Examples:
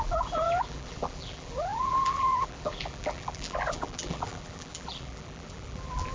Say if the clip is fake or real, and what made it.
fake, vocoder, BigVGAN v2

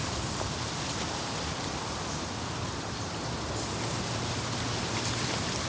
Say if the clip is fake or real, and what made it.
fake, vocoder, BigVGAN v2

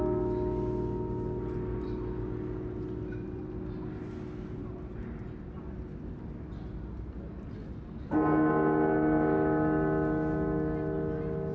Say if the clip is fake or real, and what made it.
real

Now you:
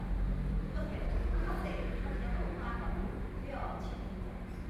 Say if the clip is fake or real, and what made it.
fake, vocoder, BigVGAN v2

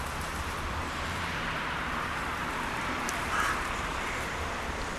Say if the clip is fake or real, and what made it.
fake, vocoder, BigVGAN v2